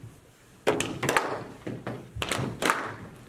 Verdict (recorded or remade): recorded